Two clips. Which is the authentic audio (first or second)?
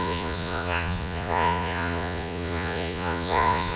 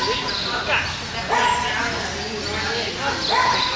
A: second